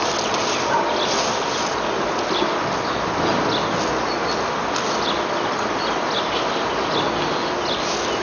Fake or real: real